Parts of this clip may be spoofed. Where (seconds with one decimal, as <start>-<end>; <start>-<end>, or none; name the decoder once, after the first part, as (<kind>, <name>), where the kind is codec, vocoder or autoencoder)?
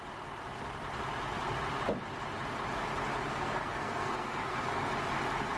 3.3-4.9 (codec, SNAC)